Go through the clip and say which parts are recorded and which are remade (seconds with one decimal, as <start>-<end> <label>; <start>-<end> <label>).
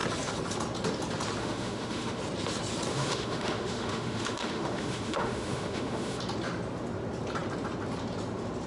0.0-1.4 recorded; 1.4-2.2 remade; 2.2-2.9 recorded; 2.9-6.2 remade; 6.2-8.7 recorded